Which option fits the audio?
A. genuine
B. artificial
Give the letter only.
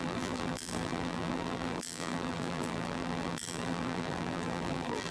B